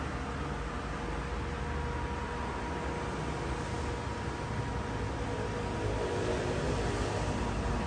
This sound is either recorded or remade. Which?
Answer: recorded